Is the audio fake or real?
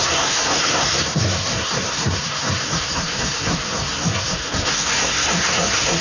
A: fake